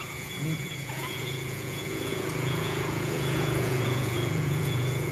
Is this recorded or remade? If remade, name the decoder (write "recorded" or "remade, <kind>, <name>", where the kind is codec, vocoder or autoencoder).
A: remade, vocoder, Vocos